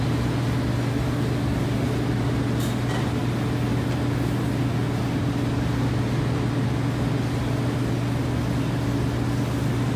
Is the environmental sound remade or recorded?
recorded